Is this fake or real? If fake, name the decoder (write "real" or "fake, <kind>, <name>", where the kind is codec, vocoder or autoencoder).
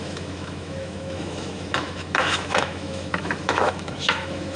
fake, autoencoder, DAC-VAE